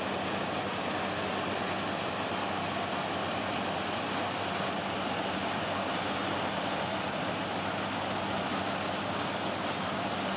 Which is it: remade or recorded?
recorded